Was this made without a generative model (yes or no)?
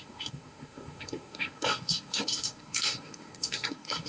no